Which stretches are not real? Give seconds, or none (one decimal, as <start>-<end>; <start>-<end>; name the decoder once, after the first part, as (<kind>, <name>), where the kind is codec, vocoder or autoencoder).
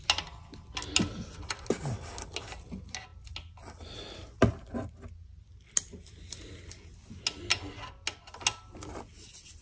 none